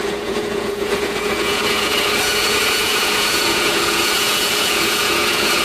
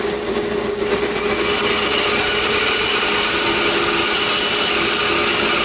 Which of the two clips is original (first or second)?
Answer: second